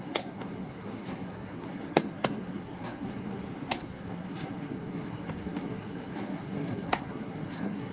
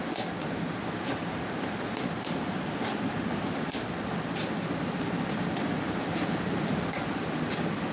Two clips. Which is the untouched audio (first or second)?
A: second